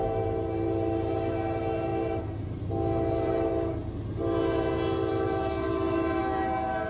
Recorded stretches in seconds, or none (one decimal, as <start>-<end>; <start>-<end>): 0.0-6.9